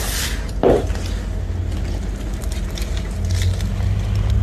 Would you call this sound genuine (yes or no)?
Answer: yes